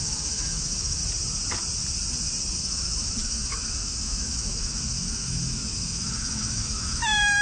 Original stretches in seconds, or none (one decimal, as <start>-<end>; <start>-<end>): 1.0-2.6